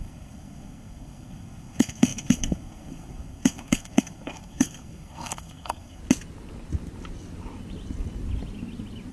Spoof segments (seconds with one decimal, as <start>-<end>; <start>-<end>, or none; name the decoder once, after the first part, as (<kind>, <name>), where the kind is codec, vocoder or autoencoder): 0.0-6.0 (codec, SNAC)